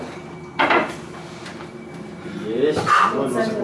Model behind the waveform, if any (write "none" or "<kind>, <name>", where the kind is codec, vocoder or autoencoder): none